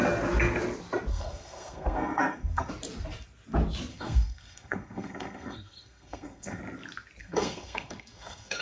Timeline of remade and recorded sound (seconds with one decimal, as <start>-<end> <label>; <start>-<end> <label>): 0.0-1.1 recorded; 1.1-2.7 remade; 2.7-3.9 recorded; 3.9-6.6 remade; 6.6-7.2 recorded; 7.2-8.6 remade